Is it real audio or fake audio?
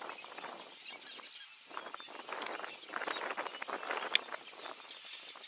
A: real